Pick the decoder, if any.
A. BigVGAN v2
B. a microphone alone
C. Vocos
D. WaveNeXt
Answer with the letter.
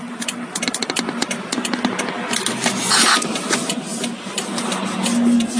B